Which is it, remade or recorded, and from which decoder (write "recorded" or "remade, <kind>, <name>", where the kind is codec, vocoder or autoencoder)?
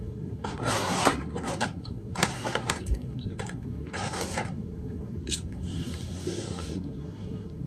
remade, codec, SNAC